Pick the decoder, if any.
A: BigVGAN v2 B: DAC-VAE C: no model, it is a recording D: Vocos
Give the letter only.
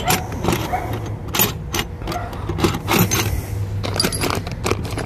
C